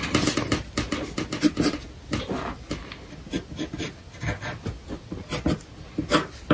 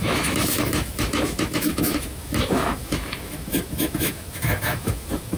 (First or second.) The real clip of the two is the first